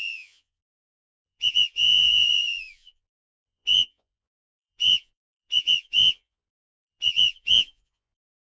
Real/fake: fake